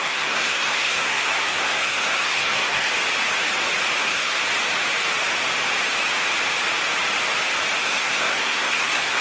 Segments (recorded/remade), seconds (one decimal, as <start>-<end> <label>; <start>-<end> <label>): 0.0-2.9 remade; 2.9-4.0 recorded; 4.0-4.4 remade; 4.4-7.8 recorded; 7.8-9.2 remade